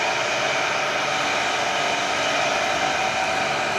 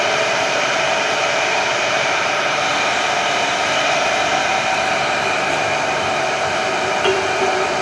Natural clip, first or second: first